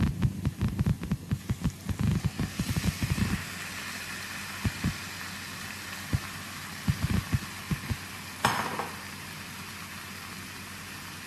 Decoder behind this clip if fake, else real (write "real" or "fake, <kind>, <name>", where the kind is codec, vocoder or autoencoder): real